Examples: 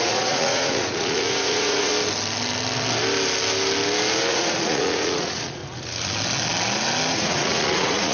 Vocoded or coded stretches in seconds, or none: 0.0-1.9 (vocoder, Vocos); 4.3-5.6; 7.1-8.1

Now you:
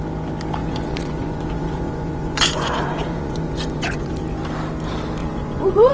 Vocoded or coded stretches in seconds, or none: 0.6-4.1 (vocoder, Vocos); 5.2-5.9